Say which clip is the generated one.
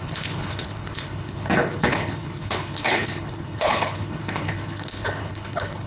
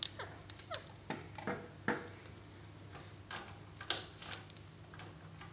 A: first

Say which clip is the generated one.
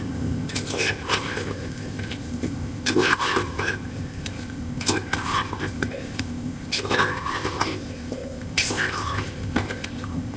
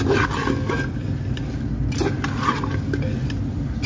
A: first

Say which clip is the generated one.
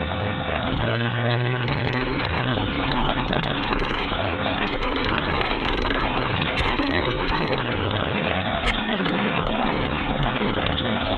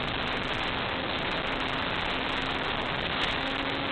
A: first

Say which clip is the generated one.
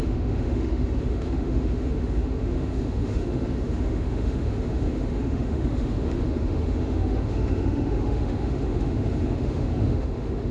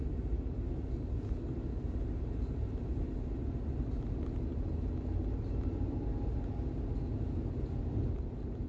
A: first